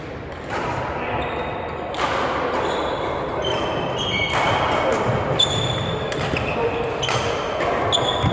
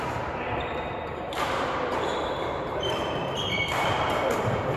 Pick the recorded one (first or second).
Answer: first